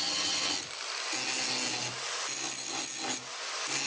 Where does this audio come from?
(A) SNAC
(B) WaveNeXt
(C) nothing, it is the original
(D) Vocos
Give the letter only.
C